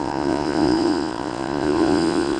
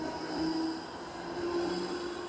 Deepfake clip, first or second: first